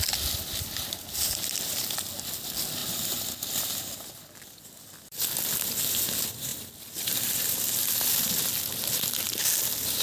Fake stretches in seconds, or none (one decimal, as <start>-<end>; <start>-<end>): 2.8-3.3; 6.5-7.5